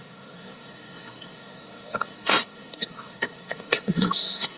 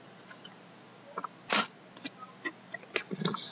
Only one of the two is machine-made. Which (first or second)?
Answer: first